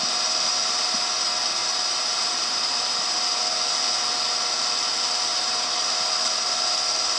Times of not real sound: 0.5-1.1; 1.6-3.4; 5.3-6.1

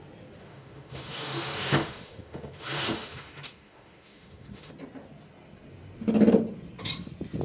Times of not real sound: 0.4-4.7

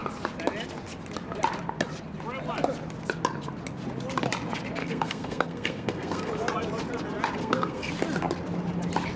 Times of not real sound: 4.8-6.3; 7.4-7.9

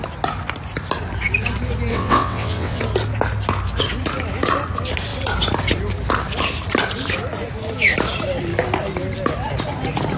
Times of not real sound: 1.9-2.8

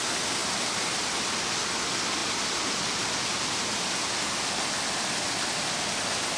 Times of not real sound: none

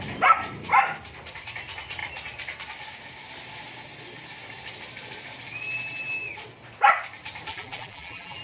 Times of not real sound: 7.5-8.4

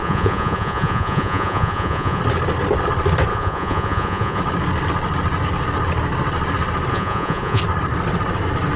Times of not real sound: 0.0-2.2; 3.3-4.4; 6.9-7.6